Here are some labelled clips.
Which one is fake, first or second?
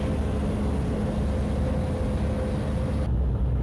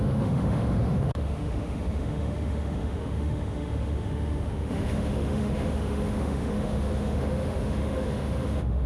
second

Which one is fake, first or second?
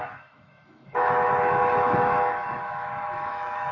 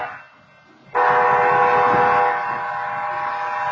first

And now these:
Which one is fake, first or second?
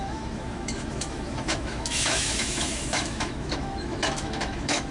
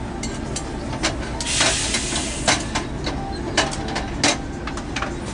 first